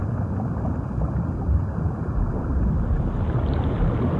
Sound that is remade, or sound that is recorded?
recorded